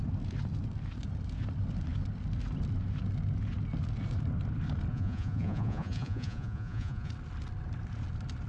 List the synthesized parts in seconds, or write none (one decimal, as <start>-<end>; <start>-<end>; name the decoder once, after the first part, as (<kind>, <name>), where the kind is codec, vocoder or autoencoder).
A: 4.9-7.1 (vocoder, Vocos)